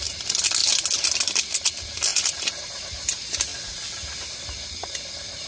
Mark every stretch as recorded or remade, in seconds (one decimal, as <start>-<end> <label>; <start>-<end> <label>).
0.0-5.5 recorded